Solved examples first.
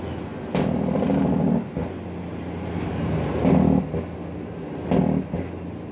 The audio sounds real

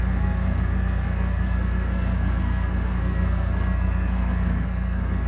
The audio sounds fake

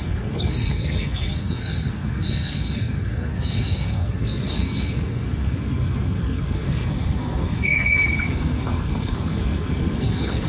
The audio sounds fake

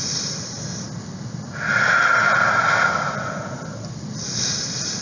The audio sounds real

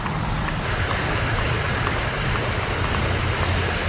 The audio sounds real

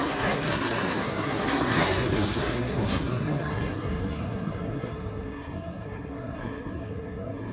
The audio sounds fake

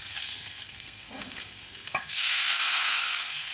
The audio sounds fake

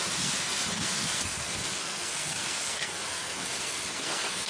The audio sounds fake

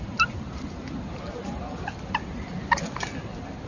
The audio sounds real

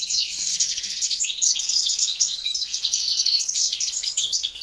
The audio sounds fake